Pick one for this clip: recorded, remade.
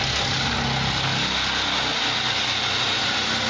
recorded